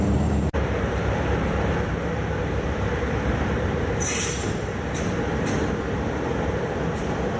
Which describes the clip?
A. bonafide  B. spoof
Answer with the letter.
B